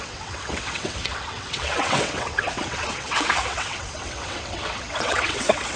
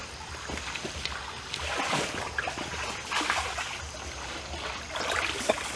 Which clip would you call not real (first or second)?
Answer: first